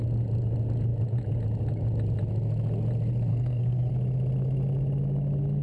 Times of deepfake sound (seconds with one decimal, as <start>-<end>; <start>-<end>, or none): 3.3-3.9